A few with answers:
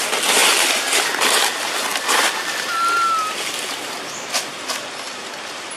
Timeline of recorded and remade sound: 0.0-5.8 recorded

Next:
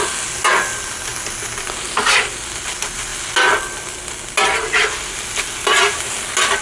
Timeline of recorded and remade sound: 0.0-6.6 recorded

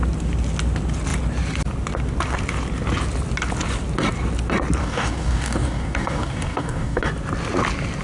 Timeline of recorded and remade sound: 0.0-4.8 recorded; 4.8-7.0 remade; 7.0-8.0 recorded

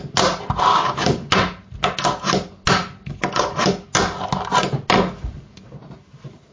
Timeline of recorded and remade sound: 0.0-0.7 recorded; 0.7-1.3 remade; 1.3-6.5 recorded

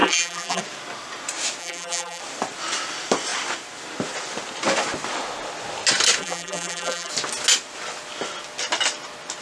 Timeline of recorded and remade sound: 0.0-0.6 remade; 0.6-1.6 recorded; 1.6-2.2 remade; 2.2-6.2 recorded; 6.2-7.1 remade; 7.1-9.4 recorded

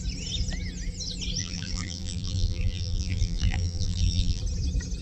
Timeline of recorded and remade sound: 0.0-1.4 recorded; 1.4-4.4 remade; 4.4-5.0 recorded